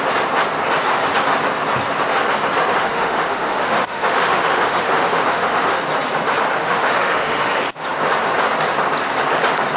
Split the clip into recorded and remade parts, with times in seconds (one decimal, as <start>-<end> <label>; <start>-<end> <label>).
0.0-2.7 recorded; 2.7-5.8 remade; 5.8-6.6 recorded; 6.6-7.5 remade; 7.5-9.8 recorded

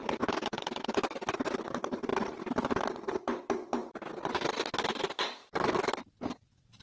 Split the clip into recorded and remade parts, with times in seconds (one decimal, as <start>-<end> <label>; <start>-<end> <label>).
0.0-2.1 recorded; 2.1-3.4 remade; 3.4-5.4 recorded; 5.4-6.0 remade; 6.0-6.8 recorded

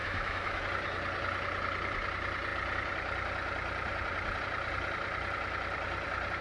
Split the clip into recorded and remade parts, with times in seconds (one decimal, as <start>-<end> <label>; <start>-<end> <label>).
0.0-0.6 remade; 0.6-6.4 recorded

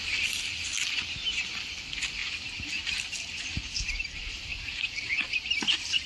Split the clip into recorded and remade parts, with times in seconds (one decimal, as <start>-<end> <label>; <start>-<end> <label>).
0.0-6.1 recorded

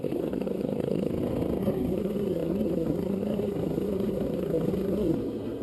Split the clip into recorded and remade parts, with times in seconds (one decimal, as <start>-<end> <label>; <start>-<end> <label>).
0.0-1.1 remade; 1.1-1.6 recorded; 1.6-5.6 remade